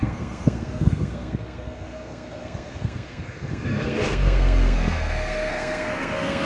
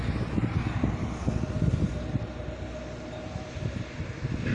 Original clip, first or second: second